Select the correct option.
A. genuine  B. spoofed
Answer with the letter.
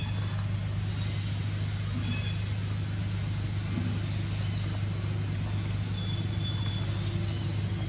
A